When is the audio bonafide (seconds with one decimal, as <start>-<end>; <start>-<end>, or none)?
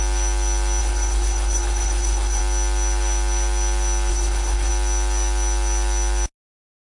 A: 0.0-0.8; 2.4-4.1; 4.7-6.8